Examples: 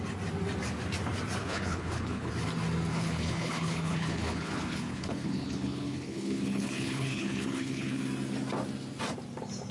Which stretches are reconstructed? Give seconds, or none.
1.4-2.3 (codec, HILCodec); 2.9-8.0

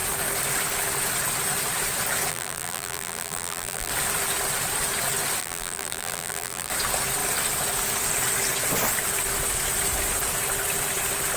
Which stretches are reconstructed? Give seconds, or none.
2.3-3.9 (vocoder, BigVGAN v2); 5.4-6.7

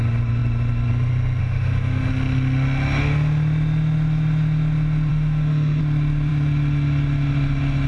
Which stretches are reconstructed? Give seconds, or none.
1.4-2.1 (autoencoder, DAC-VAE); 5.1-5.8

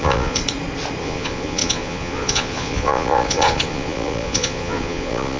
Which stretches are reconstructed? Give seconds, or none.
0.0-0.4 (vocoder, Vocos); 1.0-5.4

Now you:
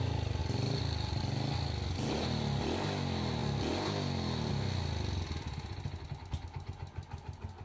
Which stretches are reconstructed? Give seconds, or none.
none

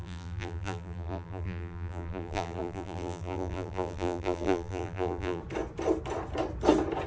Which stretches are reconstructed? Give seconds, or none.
0.0-5.4 (vocoder, BigVGAN v2)